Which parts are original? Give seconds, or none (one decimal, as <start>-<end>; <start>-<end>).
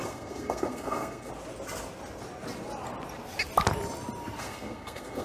1.3-4.4